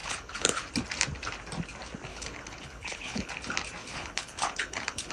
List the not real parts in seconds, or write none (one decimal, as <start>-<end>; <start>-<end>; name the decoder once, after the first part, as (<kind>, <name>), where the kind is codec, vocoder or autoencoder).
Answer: 0.0-0.7 (codec, HILCodec); 2.1-3.3; 3.8-5.1